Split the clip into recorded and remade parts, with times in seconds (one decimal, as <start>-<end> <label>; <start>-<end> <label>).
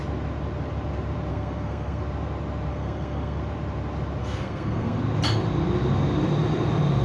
0.0-1.3 recorded; 1.3-2.0 remade; 2.0-2.7 recorded; 2.7-3.4 remade; 3.4-4.2 recorded; 4.2-5.0 remade; 5.0-7.0 recorded